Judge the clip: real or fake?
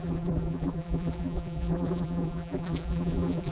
fake